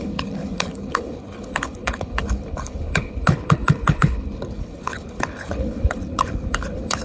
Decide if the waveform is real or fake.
fake